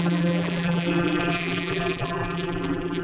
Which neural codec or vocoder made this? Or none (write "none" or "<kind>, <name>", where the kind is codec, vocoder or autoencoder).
vocoder, BigVGAN v2